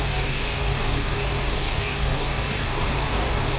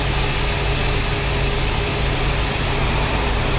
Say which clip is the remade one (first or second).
first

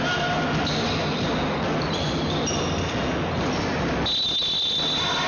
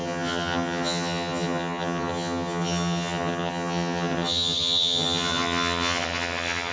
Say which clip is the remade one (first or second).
second